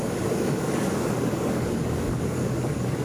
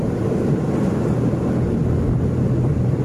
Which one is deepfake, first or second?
first